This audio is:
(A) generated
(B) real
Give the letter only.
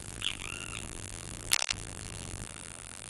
A